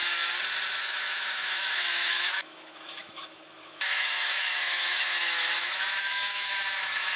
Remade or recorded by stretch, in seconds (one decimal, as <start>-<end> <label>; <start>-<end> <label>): 0.0-0.8 recorded; 0.8-7.2 remade